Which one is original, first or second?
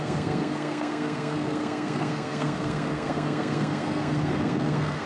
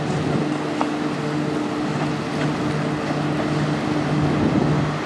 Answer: second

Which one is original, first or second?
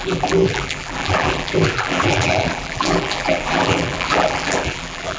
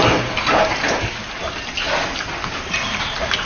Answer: second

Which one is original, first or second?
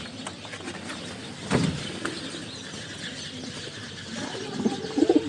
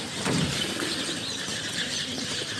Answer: first